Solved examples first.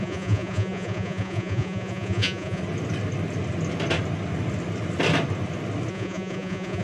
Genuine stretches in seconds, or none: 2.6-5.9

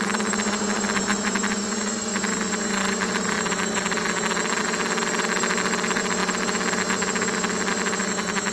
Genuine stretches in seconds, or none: none

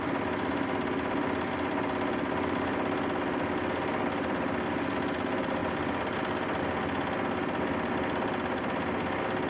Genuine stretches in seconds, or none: 0.0-9.5

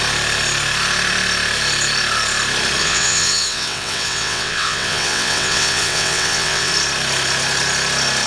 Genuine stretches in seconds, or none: 0.0-2.8; 6.7-8.3